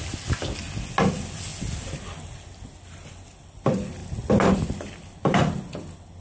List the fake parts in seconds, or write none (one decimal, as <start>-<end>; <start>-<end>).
none